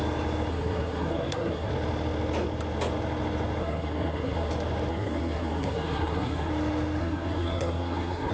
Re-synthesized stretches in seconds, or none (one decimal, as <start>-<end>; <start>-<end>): 0.5-1.7; 3.6-4.5; 4.9-6.5; 7.0-8.3